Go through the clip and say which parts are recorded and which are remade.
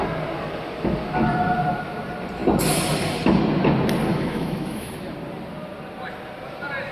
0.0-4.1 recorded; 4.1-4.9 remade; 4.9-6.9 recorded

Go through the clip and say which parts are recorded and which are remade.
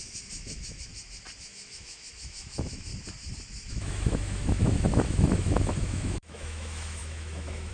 0.0-0.9 remade; 0.9-1.4 recorded; 1.4-2.9 remade; 2.9-3.7 recorded; 3.7-7.7 remade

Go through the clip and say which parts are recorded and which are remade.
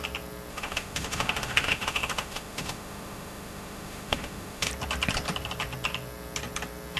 0.0-0.5 recorded; 0.5-4.7 remade; 4.7-7.0 recorded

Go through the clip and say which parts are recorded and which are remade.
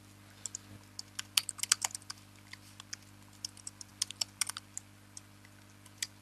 0.0-6.2 recorded